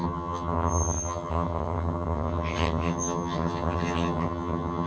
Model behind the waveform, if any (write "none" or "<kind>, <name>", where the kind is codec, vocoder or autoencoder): vocoder, HiFi-GAN